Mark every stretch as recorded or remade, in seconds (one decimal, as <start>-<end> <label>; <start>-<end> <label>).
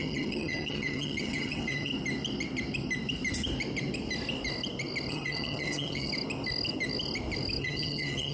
0.0-1.9 remade; 1.9-5.1 recorded; 5.1-6.1 remade; 6.1-7.6 recorded; 7.6-8.3 remade